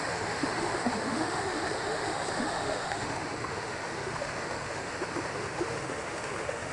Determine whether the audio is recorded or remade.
remade